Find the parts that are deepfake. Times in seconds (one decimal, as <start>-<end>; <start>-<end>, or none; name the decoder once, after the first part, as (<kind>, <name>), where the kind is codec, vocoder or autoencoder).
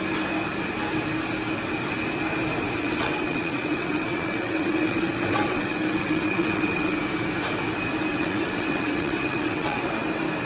2.8-7.0 (vocoder, WaveNeXt); 8.1-9.8